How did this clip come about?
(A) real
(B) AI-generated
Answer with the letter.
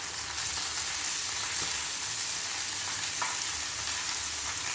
A